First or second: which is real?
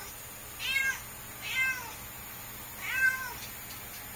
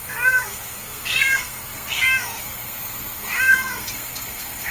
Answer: first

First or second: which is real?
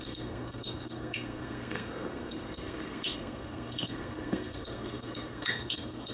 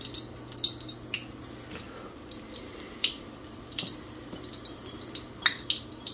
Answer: second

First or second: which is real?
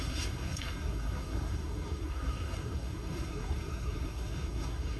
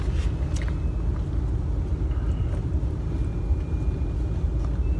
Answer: second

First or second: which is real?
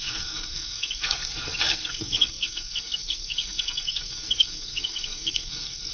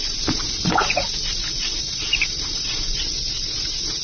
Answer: second